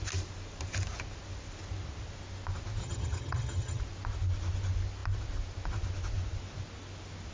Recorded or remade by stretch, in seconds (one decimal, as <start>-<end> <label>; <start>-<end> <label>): 0.0-2.8 recorded; 2.8-3.8 remade; 3.8-7.3 recorded